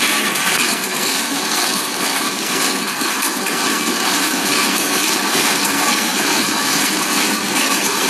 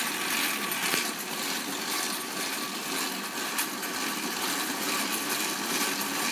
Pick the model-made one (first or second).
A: first